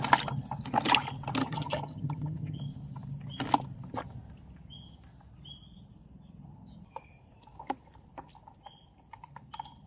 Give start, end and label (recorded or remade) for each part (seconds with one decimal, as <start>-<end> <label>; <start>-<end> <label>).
0.0-1.4 recorded; 1.4-2.6 remade; 2.6-9.9 recorded